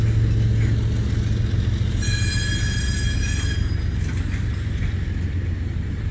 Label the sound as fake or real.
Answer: real